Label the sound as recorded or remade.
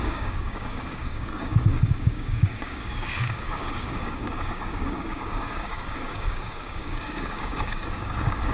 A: remade